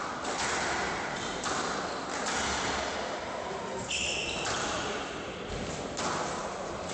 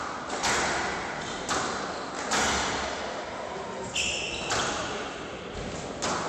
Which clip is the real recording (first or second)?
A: second